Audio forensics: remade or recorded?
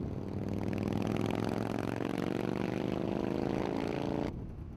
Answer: recorded